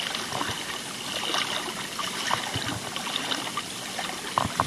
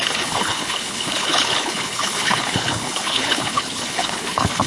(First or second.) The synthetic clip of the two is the second